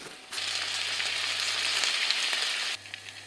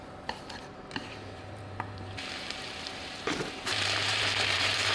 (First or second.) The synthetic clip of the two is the second